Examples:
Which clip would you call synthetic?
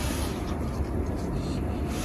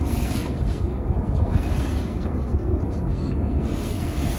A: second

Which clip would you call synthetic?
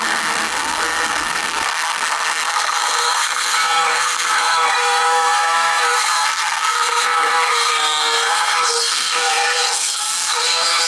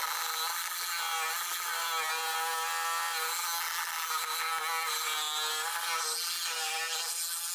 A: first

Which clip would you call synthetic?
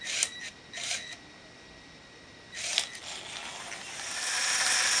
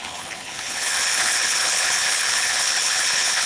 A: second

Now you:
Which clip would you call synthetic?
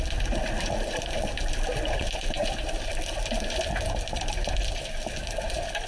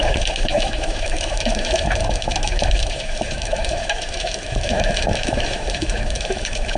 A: second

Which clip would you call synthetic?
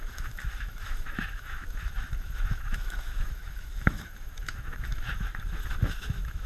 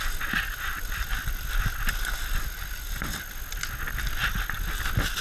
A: first